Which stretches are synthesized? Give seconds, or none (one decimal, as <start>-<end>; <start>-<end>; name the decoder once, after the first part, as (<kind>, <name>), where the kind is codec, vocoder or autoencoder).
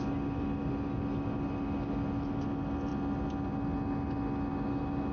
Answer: none